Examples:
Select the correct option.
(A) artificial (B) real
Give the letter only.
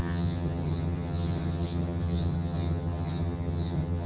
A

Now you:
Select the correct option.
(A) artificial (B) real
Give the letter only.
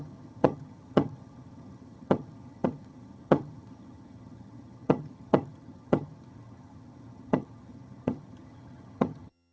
A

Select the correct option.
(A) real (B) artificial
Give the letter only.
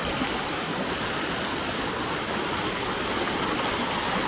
A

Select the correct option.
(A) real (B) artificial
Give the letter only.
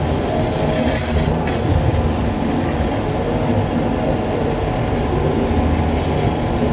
A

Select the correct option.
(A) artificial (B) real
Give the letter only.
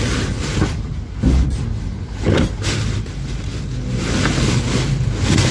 B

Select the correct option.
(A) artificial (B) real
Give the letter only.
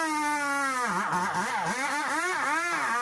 B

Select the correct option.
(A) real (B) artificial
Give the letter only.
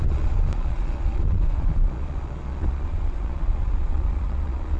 B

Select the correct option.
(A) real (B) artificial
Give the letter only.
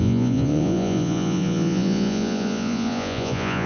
B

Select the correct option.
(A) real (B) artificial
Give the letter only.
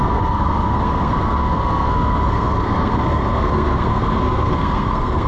B